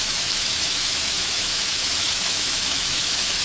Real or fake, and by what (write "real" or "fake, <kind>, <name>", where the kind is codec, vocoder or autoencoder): fake, autoencoder, DAC-VAE